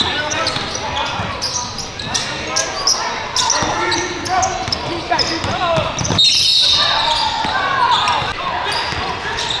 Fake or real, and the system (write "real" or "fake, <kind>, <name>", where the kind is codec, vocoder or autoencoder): real